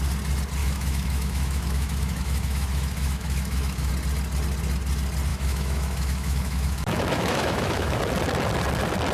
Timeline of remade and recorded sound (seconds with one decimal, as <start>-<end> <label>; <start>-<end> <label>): 0.0-0.6 recorded; 0.6-3.9 remade; 3.9-5.3 recorded; 5.3-8.0 remade; 8.0-9.1 recorded